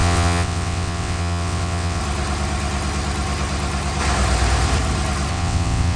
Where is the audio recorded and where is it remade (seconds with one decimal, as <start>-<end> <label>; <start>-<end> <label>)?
0.0-2.0 remade; 2.0-5.3 recorded; 5.3-6.0 remade